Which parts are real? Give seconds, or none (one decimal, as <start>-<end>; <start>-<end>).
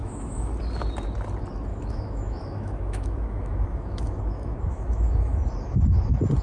0.5-1.7; 5.5-6.4